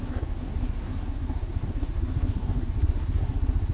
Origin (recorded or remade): remade